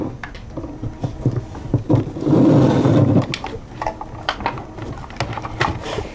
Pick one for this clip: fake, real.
real